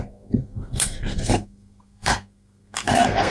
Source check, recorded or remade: remade